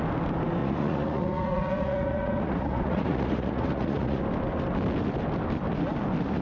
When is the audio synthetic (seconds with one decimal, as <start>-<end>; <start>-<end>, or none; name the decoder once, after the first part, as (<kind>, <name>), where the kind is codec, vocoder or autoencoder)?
0.6-4.2 (vocoder, Vocos)